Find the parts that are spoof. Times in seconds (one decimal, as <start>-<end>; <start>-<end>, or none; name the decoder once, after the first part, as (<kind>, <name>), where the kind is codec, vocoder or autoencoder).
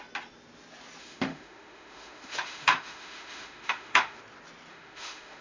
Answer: 1.0-4.2 (autoencoder, DAC-VAE); 4.7-5.4